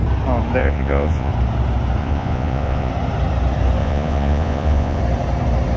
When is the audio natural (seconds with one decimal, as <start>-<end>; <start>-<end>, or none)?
0.0-0.6; 1.3-2.0; 2.9-3.8; 5.0-5.8